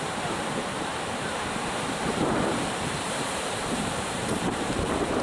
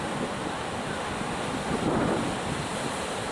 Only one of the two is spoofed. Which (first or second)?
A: first